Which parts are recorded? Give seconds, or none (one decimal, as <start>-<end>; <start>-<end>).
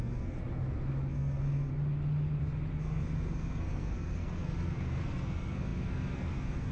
0.4-1.1; 1.7-2.8